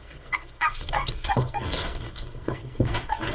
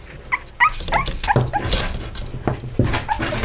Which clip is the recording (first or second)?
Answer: second